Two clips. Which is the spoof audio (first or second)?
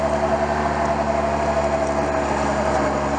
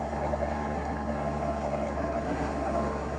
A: second